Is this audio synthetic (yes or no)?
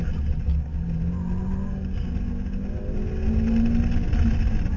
no